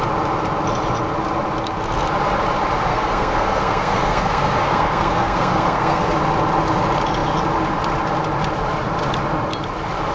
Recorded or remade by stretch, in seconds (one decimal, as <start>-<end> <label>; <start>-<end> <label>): 0.0-2.9 recorded; 2.9-6.1 remade; 6.1-10.1 recorded